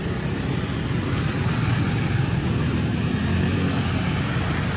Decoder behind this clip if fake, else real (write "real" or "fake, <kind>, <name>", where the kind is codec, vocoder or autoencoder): real